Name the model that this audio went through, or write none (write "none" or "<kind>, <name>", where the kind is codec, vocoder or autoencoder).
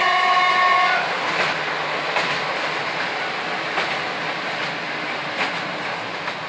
none